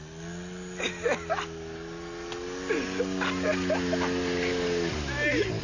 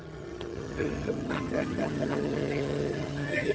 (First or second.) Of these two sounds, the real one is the first